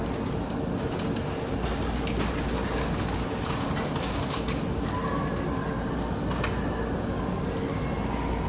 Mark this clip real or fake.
real